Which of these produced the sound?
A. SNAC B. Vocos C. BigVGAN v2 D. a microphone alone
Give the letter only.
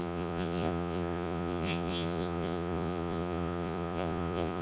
B